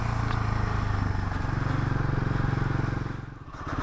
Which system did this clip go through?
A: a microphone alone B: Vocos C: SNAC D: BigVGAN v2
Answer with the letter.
A